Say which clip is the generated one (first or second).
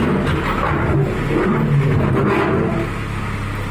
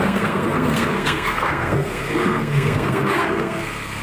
second